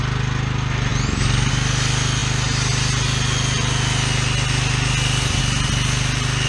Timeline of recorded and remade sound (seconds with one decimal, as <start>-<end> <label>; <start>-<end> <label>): 0.0-6.5 recorded